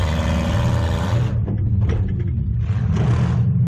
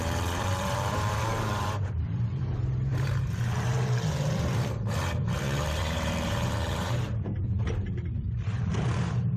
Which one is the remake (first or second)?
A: second